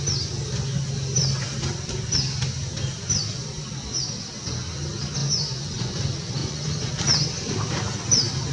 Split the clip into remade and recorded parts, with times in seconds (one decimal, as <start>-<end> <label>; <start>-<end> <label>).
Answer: 0.0-5.2 recorded; 5.2-6.0 remade; 6.0-6.4 recorded; 6.4-6.9 remade; 6.9-8.5 recorded